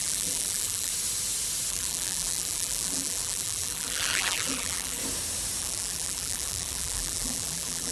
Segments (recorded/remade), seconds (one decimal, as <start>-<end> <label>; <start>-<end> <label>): 0.0-0.9 remade; 0.9-1.7 recorded; 1.7-5.0 remade; 5.0-5.6 recorded; 5.6-7.9 remade